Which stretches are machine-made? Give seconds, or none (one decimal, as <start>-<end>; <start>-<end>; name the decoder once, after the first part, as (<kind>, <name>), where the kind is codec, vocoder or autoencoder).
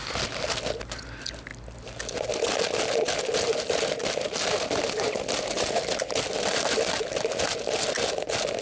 none